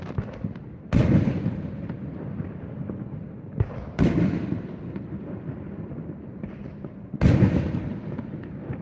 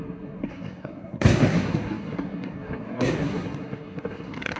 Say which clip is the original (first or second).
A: first